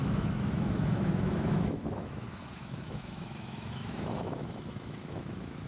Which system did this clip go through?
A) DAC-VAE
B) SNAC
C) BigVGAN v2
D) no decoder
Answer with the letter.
A